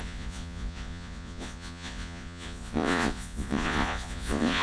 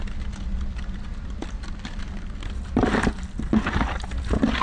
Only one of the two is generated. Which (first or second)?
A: first